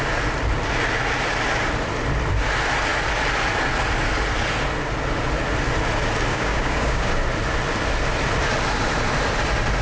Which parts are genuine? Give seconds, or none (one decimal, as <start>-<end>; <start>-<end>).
0.0-6.3; 7.1-9.8